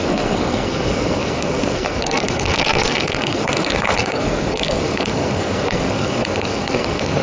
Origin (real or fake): fake